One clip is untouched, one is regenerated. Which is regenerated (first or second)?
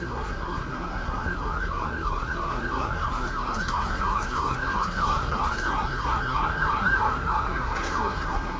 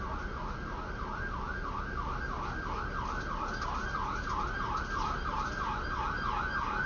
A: first